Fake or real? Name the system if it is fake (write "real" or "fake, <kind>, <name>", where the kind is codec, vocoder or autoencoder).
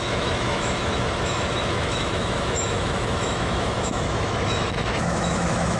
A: fake, autoencoder, DAC-VAE